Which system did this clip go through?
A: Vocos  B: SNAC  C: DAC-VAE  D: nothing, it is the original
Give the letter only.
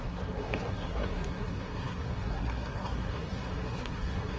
B